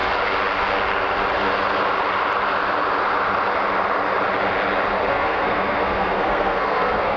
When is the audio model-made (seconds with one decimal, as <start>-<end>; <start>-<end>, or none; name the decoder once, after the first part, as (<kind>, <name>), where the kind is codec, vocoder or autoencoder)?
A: 5.1-7.2 (codec, SNAC)